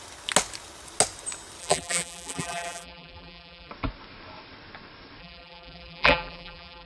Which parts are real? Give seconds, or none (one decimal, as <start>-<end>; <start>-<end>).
0.0-1.6; 3.7-5.2